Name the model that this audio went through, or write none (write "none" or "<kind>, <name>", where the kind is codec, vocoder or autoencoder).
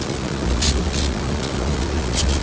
vocoder, Vocos